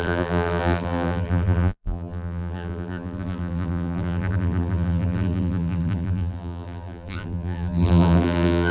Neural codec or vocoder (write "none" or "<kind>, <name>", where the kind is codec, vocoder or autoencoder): vocoder, BigVGAN v2